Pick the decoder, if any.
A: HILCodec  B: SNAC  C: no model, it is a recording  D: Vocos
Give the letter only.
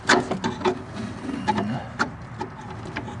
C